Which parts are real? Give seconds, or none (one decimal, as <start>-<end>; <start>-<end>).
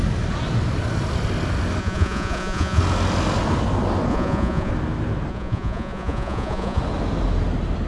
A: 0.0-1.8; 2.8-4.1; 4.7-5.3; 6.8-7.9